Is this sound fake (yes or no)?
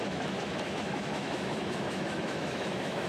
yes